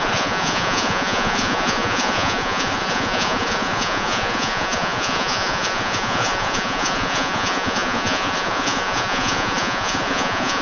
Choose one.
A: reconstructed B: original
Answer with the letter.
A